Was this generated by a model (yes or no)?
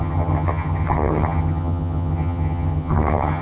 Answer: yes